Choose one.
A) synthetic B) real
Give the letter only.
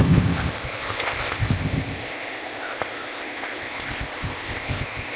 A